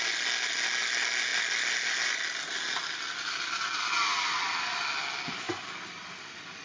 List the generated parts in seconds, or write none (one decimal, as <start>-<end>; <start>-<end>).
none